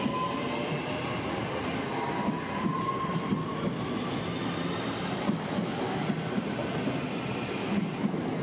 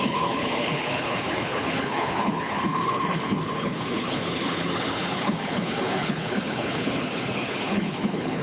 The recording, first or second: first